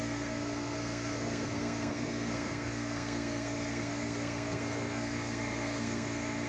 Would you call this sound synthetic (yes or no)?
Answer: yes